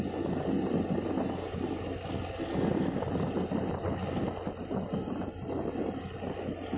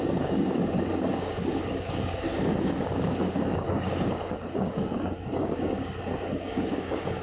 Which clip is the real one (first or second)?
first